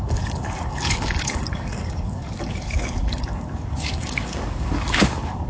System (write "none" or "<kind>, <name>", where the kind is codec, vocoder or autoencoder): codec, DAC